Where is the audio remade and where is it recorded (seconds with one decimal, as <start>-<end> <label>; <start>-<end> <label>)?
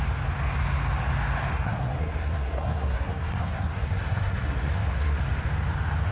0.0-1.5 recorded; 1.5-5.2 remade; 5.2-6.1 recorded